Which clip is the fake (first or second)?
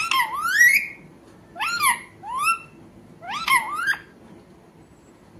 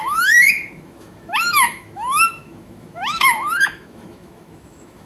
second